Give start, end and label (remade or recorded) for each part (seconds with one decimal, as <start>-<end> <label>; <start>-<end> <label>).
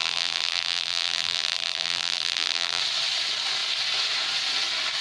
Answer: 0.0-2.8 remade; 2.8-5.0 recorded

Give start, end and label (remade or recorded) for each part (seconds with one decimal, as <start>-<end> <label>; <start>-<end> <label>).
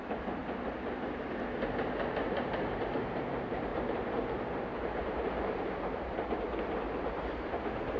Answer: 0.0-0.4 remade; 0.4-2.2 recorded; 2.2-3.7 remade; 3.7-4.8 recorded; 4.8-8.0 remade